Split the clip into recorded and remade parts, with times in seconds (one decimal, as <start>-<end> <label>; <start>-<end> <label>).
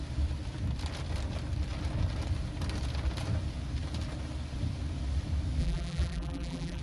0.0-5.6 recorded; 5.6-6.8 remade